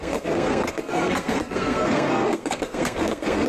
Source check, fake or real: fake